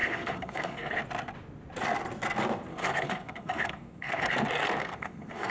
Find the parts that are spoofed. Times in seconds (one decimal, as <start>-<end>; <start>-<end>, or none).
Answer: 0.0-0.9; 2.7-4.3; 4.8-5.5